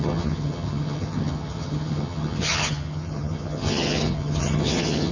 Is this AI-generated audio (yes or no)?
yes